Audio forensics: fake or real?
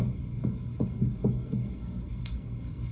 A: fake